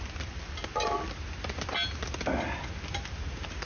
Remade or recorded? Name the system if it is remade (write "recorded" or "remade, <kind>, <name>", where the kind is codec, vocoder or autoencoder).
recorded